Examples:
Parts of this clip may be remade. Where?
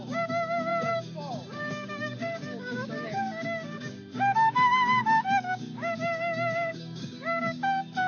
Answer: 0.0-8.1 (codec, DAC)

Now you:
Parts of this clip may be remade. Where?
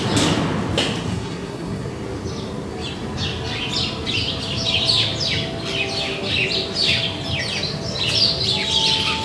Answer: 1.1-1.9 (codec, SNAC)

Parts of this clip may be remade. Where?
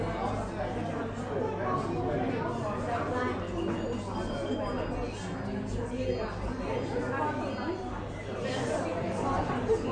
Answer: none